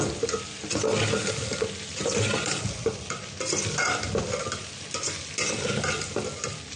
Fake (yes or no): no